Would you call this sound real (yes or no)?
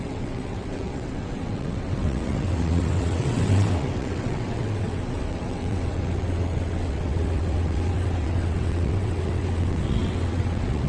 no